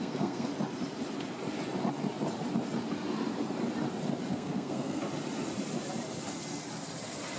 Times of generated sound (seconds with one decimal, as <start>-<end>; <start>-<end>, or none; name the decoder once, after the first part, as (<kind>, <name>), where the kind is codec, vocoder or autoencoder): 0.0-0.5 (codec, SNAC); 4.3-5.0